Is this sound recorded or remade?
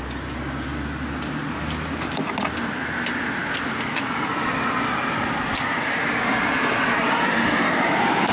recorded